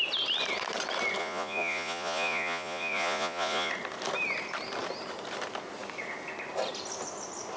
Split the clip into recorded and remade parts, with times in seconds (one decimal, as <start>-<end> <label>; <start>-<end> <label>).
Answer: 0.0-1.2 recorded; 1.2-3.7 remade; 3.7-7.6 recorded